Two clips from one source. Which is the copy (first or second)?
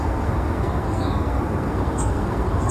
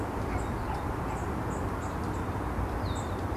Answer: first